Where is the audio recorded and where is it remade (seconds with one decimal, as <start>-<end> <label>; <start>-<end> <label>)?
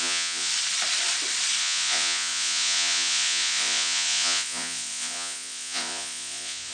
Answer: 0.0-0.5 remade; 0.5-1.6 recorded; 1.6-6.7 remade